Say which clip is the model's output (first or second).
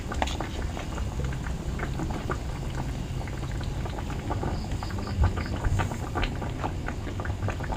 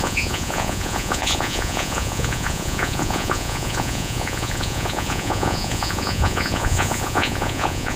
second